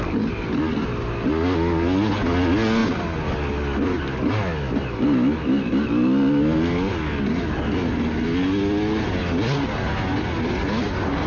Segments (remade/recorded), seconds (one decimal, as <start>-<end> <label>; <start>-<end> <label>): 0.0-11.3 recorded